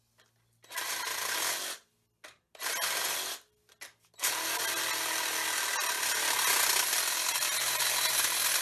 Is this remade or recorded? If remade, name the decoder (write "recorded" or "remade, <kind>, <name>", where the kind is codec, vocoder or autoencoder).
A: recorded